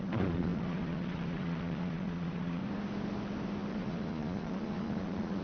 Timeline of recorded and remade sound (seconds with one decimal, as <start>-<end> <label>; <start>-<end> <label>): 0.0-2.6 remade; 2.6-3.7 recorded; 3.7-5.4 remade